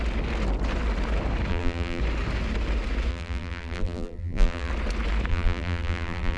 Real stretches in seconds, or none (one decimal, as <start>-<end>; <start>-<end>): 0.0-1.5; 2.0-3.1; 4.7-5.3